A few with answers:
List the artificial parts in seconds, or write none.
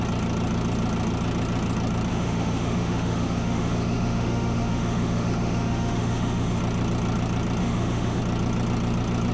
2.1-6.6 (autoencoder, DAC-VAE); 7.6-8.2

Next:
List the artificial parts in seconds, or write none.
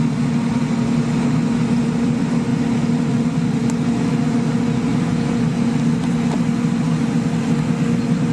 none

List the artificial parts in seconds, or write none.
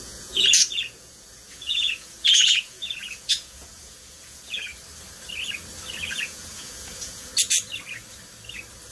0.0-4.7 (vocoder, Vocos); 6.1-7.3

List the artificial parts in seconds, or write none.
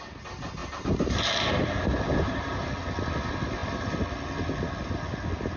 0.6-2.7 (vocoder, BigVGAN v2)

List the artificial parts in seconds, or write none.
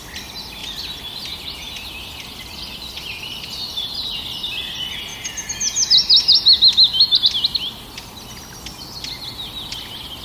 none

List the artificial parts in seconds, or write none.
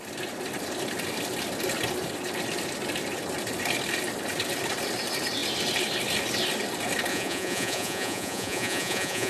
7.1-9.3 (vocoder, Vocos)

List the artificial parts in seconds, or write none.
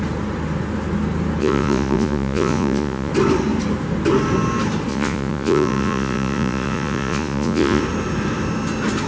1.4-3.1 (vocoder, Vocos); 4.9-7.8